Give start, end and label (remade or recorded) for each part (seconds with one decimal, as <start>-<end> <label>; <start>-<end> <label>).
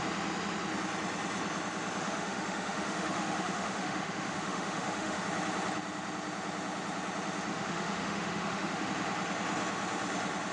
0.0-2.0 recorded; 2.0-5.2 remade; 5.2-7.5 recorded; 7.5-8.9 remade; 8.9-10.5 recorded